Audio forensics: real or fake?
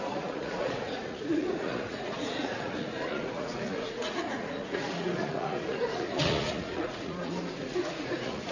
fake